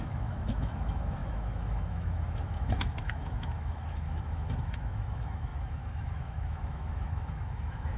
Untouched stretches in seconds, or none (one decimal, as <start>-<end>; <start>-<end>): none